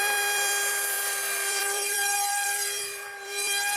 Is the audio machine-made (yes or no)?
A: yes